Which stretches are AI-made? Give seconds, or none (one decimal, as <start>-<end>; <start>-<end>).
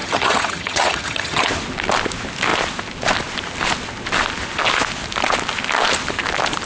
0.0-1.5